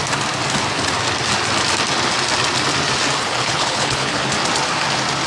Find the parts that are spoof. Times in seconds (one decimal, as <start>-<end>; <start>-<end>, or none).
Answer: 3.2-4.2